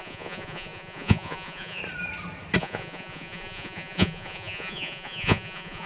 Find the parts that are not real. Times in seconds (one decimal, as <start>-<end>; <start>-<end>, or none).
0.0-1.8; 2.6-5.9